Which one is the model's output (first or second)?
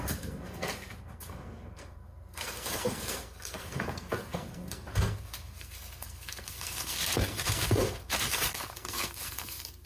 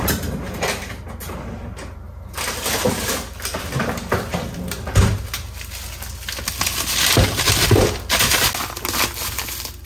first